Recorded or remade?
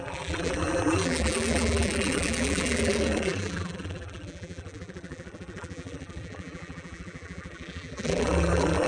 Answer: remade